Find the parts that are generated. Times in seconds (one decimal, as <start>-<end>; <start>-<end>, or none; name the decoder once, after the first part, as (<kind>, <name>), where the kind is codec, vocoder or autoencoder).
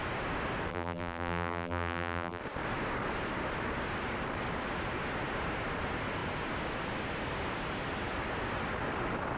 0.7-2.4 (vocoder, BigVGAN v2)